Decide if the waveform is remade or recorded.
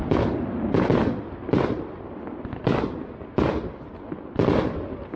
recorded